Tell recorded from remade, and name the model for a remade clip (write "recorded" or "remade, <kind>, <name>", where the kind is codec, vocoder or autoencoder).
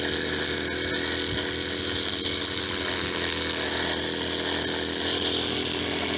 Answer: recorded